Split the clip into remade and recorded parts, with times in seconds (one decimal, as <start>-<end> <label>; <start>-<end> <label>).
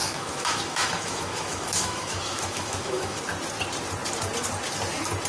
0.0-3.2 remade; 3.2-5.3 recorded